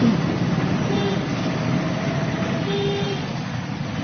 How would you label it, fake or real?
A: real